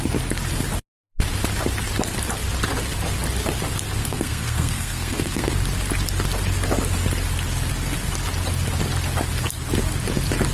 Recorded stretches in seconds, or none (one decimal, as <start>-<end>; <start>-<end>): 0.0-4.0; 5.5-10.5